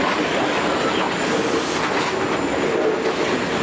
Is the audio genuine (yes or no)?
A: yes